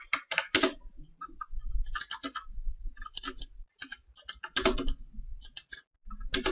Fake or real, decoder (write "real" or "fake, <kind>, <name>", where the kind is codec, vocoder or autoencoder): real